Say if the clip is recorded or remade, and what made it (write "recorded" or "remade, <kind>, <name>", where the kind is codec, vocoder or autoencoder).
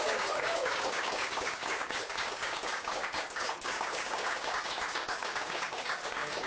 remade, codec, DAC